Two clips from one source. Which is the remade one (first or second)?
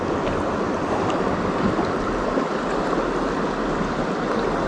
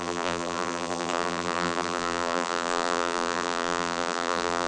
second